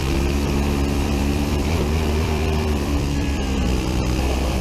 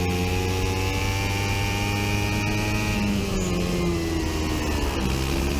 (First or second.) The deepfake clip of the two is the first